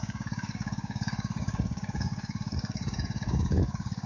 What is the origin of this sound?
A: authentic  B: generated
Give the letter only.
B